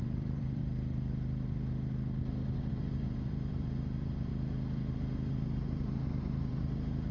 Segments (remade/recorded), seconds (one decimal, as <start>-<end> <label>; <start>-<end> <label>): 0.0-0.6 remade; 0.6-2.7 recorded; 2.7-4.3 remade; 4.3-5.3 recorded; 5.3-6.5 remade; 6.5-7.1 recorded